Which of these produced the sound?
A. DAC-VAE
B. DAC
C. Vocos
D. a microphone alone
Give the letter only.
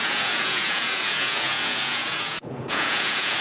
C